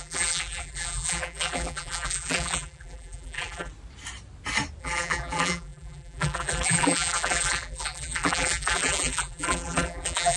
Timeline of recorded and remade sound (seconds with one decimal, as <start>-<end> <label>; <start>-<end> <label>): 0.0-3.7 remade; 3.7-4.8 recorded; 4.8-10.4 remade